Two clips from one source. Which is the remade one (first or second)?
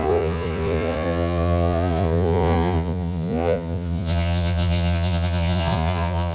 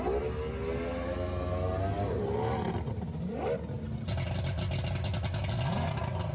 first